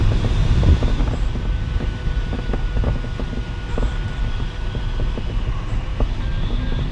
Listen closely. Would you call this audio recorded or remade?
recorded